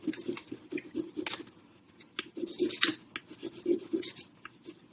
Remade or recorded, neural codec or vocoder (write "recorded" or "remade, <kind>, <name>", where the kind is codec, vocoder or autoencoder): recorded